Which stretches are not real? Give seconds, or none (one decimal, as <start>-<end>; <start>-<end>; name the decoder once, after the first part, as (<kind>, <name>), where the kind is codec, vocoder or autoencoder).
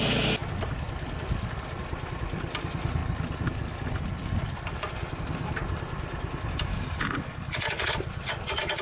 6.7-7.9 (codec, DAC)